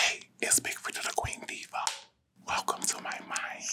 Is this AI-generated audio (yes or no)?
no